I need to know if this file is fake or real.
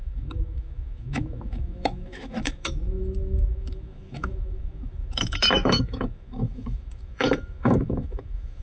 fake